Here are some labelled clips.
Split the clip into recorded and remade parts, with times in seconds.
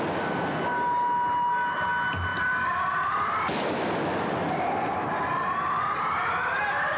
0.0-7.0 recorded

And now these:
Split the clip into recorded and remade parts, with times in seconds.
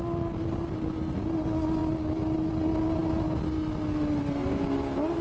0.0-5.2 recorded